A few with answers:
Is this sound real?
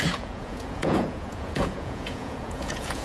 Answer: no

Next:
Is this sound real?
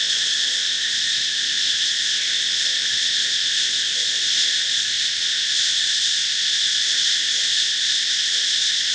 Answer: no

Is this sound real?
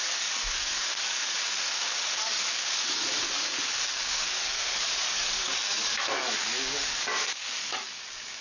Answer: no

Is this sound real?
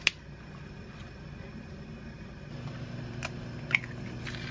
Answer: yes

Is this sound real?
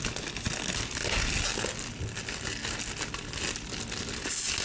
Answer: yes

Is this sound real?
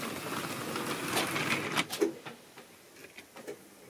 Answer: yes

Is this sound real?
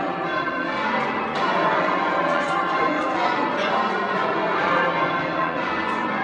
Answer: no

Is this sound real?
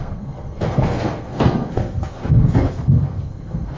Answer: no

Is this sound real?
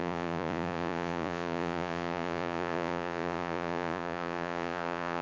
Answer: no